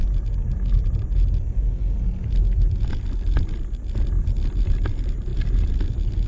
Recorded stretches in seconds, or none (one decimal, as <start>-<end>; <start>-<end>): 0.0-6.3